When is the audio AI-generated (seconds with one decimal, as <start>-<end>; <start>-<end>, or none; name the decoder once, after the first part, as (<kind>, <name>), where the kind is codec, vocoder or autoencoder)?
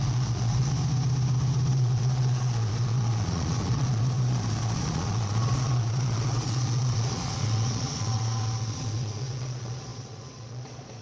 0.0-0.7 (vocoder, Vocos); 1.7-11.0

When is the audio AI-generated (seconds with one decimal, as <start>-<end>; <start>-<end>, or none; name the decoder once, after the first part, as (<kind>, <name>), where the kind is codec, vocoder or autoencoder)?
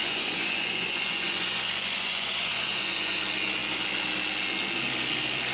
0.0-3.2 (vocoder, Vocos)